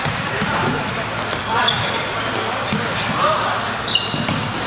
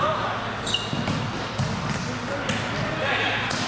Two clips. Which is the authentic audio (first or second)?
second